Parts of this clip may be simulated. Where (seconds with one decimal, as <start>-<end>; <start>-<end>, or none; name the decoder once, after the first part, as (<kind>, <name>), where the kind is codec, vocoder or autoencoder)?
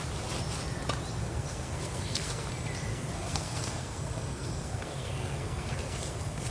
1.2-2.5 (codec, SNAC); 2.9-6.5